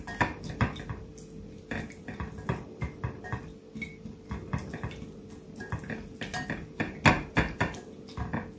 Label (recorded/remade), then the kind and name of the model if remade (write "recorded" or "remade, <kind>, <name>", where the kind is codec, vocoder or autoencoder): recorded